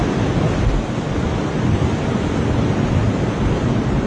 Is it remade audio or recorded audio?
recorded